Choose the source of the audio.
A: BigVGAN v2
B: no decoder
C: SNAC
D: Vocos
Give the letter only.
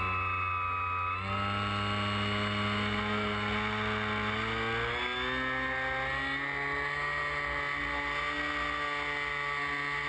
B